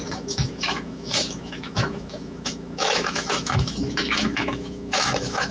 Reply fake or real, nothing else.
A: fake